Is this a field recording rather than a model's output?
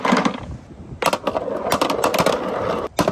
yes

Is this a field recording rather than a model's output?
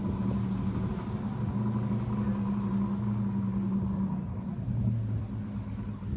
yes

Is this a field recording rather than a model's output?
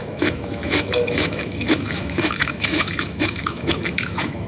no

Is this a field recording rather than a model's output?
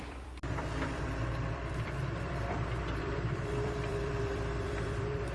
no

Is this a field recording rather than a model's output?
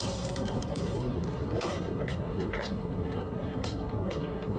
no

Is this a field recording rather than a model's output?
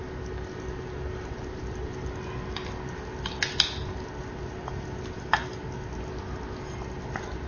yes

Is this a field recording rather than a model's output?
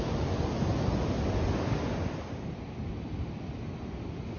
yes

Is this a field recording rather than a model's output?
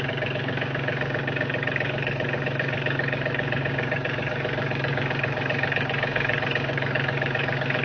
no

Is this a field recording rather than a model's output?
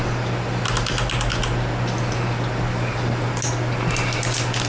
yes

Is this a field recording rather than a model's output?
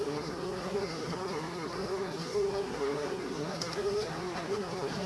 no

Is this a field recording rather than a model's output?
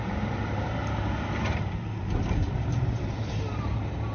no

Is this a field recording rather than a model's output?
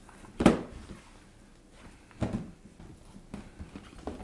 yes